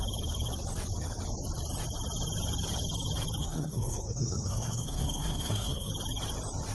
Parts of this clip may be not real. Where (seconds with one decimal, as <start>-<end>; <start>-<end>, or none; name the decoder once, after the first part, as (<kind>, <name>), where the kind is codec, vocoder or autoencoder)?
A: 3.4-5.9 (codec, SNAC)